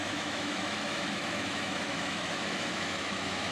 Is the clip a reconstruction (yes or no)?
yes